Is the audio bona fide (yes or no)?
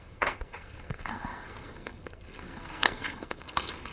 no